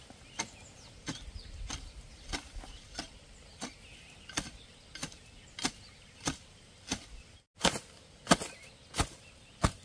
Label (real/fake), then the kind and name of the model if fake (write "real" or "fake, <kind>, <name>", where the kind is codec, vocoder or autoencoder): real